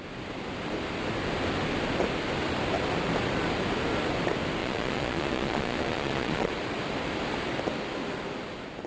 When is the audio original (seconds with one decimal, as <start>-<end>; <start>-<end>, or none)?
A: 0.0-4.6; 6.5-8.9